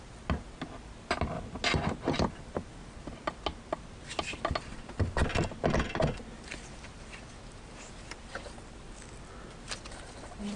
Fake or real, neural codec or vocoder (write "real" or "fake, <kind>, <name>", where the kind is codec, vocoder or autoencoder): real